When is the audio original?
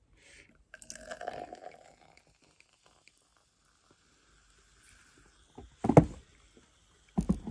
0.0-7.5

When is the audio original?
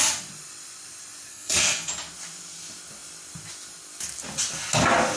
0.0-1.3; 1.9-5.2